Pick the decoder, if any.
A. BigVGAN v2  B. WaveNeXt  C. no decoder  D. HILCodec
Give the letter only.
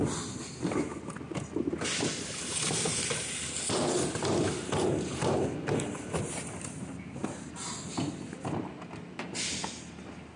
C